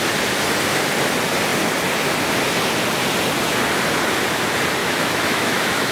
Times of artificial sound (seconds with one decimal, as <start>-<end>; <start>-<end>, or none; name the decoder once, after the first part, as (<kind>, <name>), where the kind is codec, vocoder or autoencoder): 4.8-5.9 (autoencoder, DAC-VAE)